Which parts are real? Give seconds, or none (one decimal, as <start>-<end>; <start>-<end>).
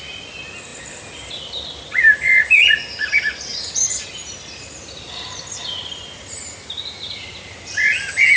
0.0-8.4